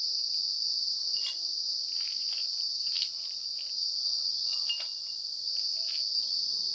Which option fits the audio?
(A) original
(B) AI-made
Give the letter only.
A